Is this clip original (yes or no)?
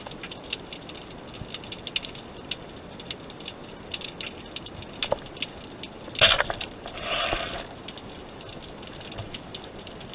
yes